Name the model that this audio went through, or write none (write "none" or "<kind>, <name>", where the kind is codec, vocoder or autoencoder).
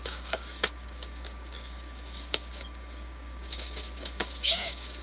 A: codec, DAC